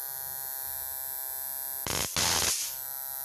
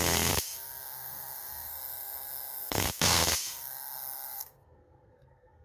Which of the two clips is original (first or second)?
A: first